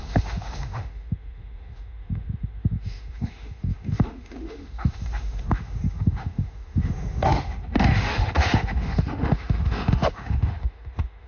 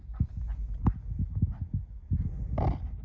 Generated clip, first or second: first